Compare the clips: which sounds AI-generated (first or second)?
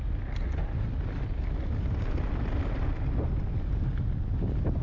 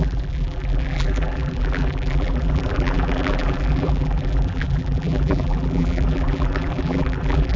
second